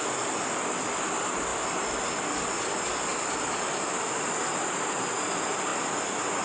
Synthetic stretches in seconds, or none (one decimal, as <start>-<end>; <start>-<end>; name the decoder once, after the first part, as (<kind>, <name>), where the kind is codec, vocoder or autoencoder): none

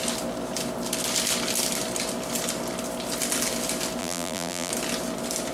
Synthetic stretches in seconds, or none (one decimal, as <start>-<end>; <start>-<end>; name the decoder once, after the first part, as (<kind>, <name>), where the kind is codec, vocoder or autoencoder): 4.0-4.7 (vocoder, BigVGAN v2)

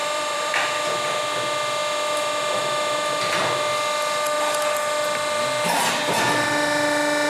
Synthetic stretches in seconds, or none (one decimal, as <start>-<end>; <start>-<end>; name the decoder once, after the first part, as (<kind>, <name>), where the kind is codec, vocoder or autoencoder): 0.0-0.5 (vocoder, BigVGAN v2)

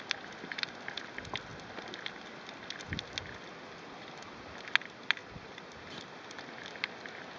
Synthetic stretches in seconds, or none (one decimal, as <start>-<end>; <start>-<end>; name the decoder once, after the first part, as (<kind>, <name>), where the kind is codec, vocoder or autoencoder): 5.2-6.0 (vocoder, BigVGAN v2)

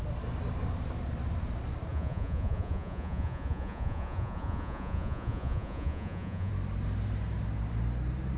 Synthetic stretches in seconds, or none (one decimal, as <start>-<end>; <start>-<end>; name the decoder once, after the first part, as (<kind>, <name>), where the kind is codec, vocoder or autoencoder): 1.9-6.5 (vocoder, Vocos)

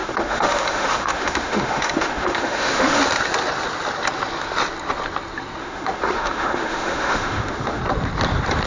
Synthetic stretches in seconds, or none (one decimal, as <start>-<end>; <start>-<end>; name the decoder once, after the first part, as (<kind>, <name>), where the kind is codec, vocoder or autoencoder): 0.0-3.0 (autoencoder, DAC-VAE); 5.6-7.8

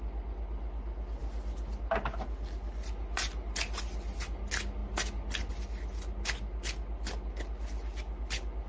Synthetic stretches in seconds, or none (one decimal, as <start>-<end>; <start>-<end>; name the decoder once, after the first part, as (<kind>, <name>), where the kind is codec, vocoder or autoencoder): none

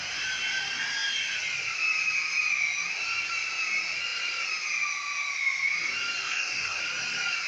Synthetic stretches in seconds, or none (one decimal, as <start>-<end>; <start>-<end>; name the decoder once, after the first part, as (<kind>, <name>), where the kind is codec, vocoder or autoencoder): 6.2-6.8 (codec, DAC)